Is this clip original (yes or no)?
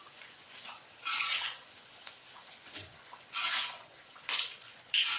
no